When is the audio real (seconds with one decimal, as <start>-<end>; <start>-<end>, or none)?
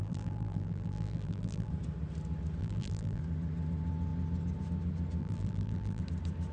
1.7-2.6; 3.2-5.2; 6.0-6.5